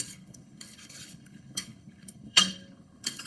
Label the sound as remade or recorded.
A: remade